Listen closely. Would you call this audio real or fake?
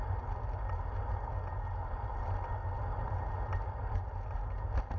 real